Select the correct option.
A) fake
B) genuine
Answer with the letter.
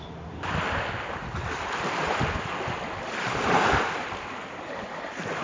B